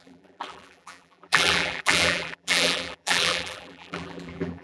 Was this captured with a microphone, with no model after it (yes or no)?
no